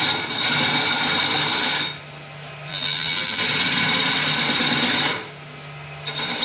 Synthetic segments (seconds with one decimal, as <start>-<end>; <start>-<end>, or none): 2.7-3.4